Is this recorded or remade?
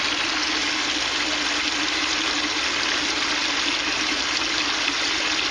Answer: recorded